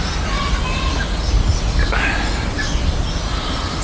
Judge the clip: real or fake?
real